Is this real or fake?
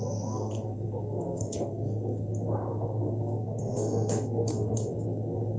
fake